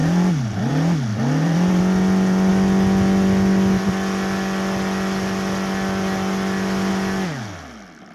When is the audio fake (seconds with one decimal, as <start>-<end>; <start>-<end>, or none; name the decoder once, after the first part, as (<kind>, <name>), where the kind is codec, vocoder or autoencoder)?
0.0-0.7 (vocoder, BigVGAN v2); 1.1-1.8